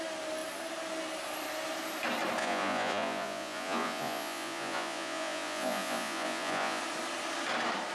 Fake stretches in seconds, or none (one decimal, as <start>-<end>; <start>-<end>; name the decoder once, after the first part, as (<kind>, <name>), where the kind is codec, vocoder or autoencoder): 2.4-6.8 (vocoder, Vocos)